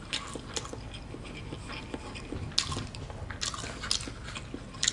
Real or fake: real